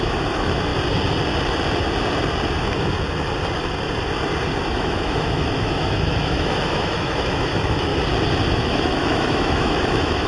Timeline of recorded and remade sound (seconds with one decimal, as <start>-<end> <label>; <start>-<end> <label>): 0.0-0.7 remade; 0.7-4.7 recorded; 4.7-7.9 remade; 7.9-8.5 recorded; 8.5-10.3 remade

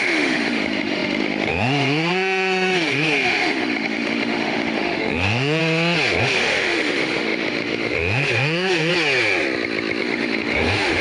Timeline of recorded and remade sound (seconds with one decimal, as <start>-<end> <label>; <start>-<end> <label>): 0.0-5.6 remade; 5.6-6.2 recorded; 6.2-8.9 remade; 8.9-10.0 recorded; 10.0-11.0 remade

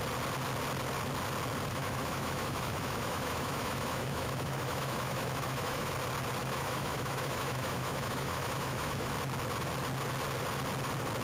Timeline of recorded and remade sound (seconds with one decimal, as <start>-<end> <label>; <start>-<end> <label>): 0.0-1.7 recorded; 1.7-5.9 remade; 5.9-6.4 recorded; 6.4-9.1 remade; 9.1-11.2 recorded

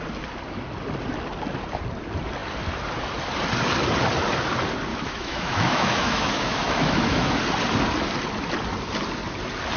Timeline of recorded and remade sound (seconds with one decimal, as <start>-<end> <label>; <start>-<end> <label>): 0.0-4.9 recorded; 4.9-7.3 remade; 7.3-9.8 recorded

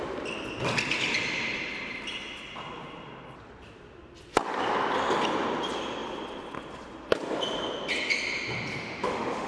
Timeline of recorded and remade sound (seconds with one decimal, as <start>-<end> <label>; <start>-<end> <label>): 0.0-8.8 recorded; 8.8-9.5 remade